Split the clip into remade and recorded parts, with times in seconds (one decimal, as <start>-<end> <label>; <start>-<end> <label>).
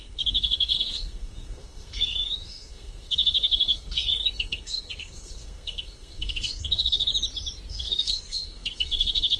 0.0-7.1 remade; 7.1-7.7 recorded; 7.7-9.4 remade